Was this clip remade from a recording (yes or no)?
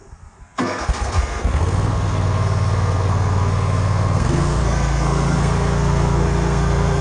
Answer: yes